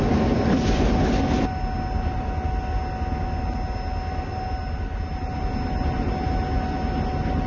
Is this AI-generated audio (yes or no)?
no